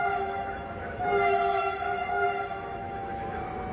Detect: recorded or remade remade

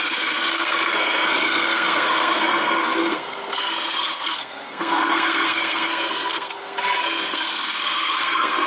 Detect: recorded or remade remade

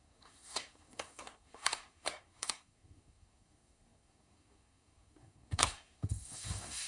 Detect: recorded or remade remade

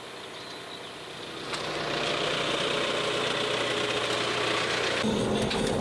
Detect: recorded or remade recorded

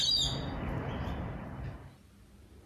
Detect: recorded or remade recorded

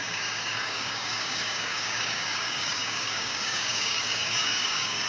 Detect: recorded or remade remade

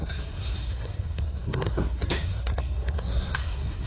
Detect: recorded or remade remade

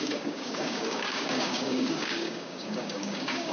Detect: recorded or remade remade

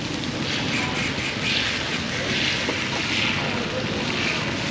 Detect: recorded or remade recorded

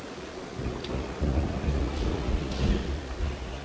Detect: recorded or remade remade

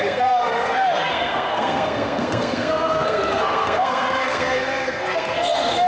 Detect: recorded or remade remade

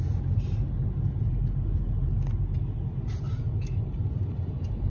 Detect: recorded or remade recorded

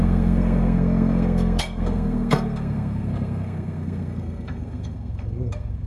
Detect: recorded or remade remade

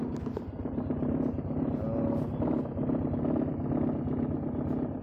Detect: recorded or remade recorded